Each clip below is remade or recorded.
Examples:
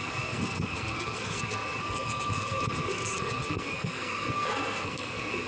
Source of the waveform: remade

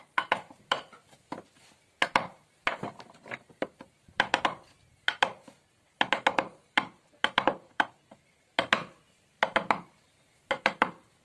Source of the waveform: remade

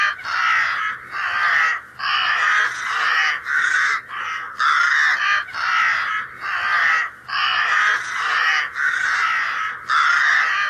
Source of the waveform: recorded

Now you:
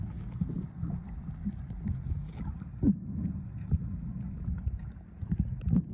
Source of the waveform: recorded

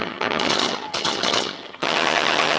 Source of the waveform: remade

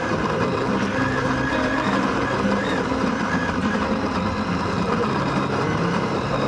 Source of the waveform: remade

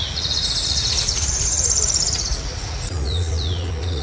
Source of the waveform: remade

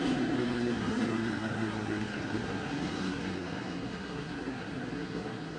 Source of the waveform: remade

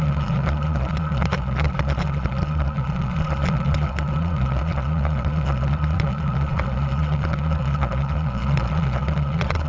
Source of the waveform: remade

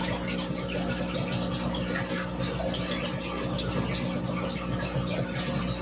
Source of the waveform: recorded